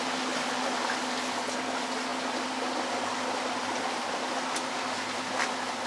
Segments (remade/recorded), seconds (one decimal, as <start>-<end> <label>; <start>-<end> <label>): 0.0-5.9 recorded